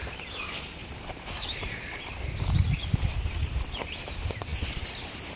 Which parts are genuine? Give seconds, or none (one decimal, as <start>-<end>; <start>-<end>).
none